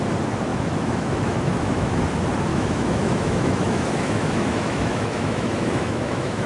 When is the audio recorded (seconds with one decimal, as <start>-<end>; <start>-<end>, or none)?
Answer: 0.0-0.5; 2.0-2.5